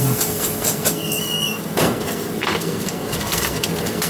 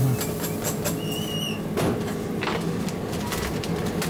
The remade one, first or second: first